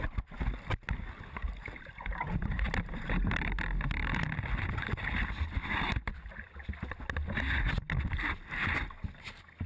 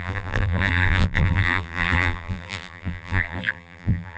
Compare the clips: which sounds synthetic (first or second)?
second